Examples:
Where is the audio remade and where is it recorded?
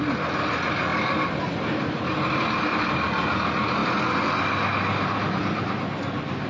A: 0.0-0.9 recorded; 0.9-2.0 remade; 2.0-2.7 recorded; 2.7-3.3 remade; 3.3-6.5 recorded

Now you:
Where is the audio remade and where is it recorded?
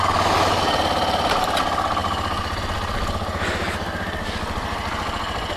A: 0.0-2.0 recorded; 2.0-2.6 remade; 2.6-5.6 recorded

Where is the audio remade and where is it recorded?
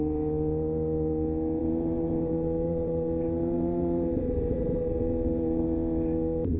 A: 0.0-1.6 recorded; 1.6-5.6 remade; 5.6-6.6 recorded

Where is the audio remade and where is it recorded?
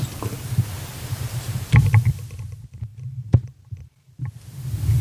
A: 0.0-0.9 recorded; 0.9-2.4 remade; 2.4-2.9 recorded; 2.9-4.3 remade; 4.3-5.0 recorded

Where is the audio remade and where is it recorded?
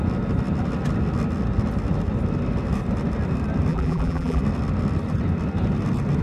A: 0.0-3.7 recorded; 3.7-4.4 remade; 4.4-6.2 recorded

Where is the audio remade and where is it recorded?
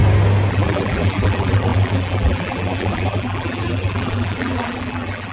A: 0.0-0.5 recorded; 0.5-5.3 remade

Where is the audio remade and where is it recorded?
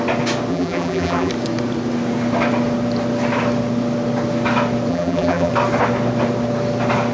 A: 0.0-0.5 recorded; 0.5-1.3 remade; 1.3-4.9 recorded; 4.9-5.5 remade; 5.5-7.1 recorded